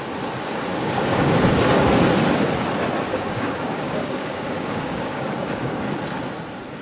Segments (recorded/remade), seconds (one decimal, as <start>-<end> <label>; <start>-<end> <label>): 0.0-0.7 recorded; 0.7-1.3 remade; 1.3-3.1 recorded; 3.1-5.7 remade; 5.7-6.8 recorded